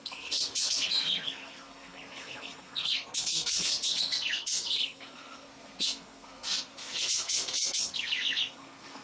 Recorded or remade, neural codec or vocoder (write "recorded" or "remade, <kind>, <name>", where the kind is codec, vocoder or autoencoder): remade, codec, SNAC